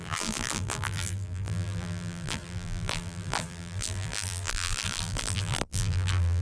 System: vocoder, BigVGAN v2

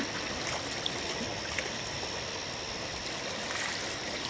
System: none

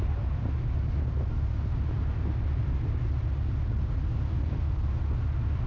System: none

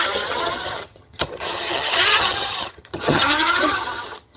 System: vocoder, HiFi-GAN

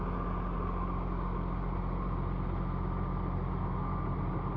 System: none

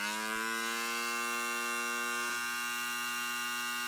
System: none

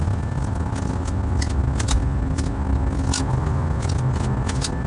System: none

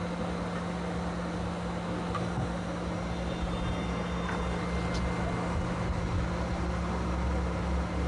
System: none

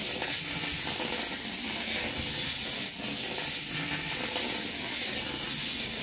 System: none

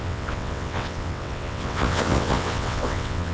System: vocoder, WaveNeXt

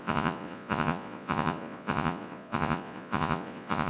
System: vocoder, Vocos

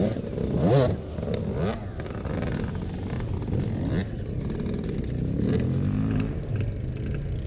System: none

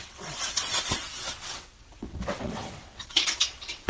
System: vocoder, WaveNeXt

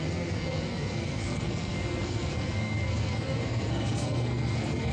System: codec, SNAC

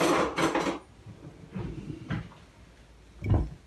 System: none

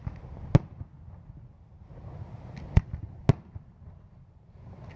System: none